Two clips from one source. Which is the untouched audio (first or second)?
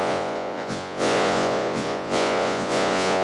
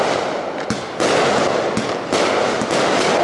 second